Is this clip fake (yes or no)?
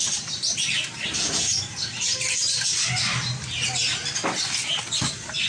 no